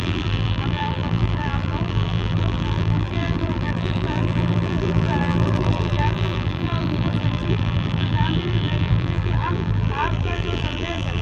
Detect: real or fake fake